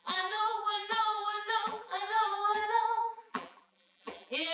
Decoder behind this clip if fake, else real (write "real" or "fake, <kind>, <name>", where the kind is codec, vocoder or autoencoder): fake, vocoder, BigVGAN v2